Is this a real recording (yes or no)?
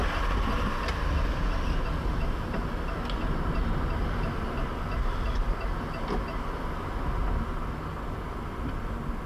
yes